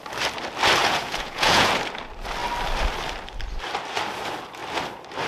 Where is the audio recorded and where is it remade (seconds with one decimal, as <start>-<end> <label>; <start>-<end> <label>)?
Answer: 0.0-0.8 recorded; 0.8-1.7 remade; 1.7-5.3 recorded